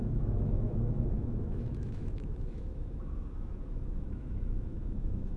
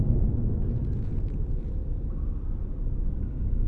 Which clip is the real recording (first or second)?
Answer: second